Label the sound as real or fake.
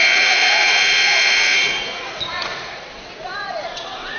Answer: fake